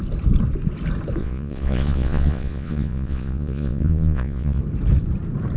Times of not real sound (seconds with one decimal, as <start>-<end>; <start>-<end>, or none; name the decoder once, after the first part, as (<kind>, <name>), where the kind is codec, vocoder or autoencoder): 1.2-4.6 (vocoder, Vocos)